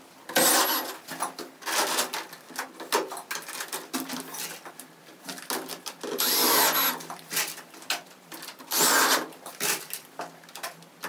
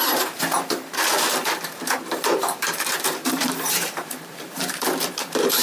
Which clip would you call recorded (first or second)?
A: first